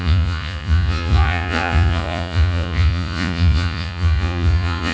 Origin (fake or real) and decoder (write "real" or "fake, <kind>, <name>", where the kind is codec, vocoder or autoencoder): fake, vocoder, Vocos